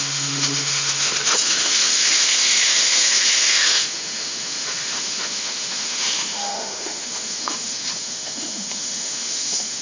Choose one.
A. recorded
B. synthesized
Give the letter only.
B